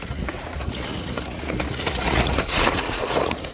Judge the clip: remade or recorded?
remade